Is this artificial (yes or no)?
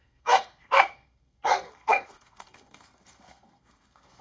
yes